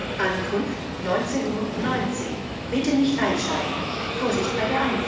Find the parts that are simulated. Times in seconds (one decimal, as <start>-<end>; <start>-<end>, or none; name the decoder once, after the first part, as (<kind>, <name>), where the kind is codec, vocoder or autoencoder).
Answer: 2.1-4.3 (autoencoder, DAC-VAE)